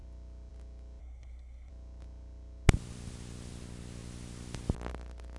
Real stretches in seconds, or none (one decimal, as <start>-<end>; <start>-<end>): 0.0-1.0; 1.7-5.4